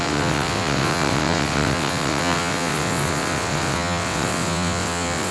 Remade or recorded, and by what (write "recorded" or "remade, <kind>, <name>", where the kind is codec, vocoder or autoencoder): remade, vocoder, WaveNeXt